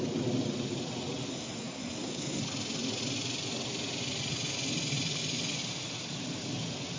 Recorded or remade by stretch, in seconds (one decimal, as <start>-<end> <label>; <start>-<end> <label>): 0.0-1.3 recorded; 1.3-2.4 remade; 2.4-7.0 recorded